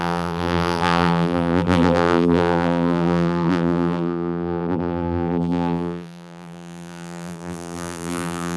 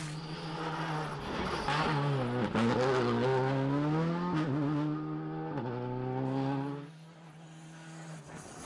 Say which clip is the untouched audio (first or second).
second